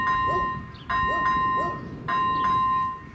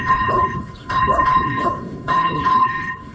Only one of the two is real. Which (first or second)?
first